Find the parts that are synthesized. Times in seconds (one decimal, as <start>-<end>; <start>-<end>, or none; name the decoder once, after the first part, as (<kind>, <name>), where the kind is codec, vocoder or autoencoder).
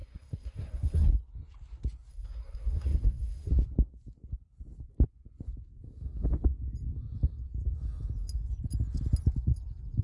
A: 0.0-1.2 (codec, SNAC); 2.1-3.5